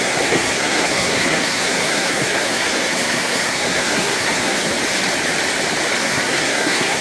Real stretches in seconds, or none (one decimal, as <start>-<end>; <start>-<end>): 4.7-6.0